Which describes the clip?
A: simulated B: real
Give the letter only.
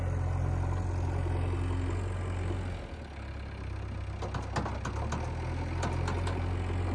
B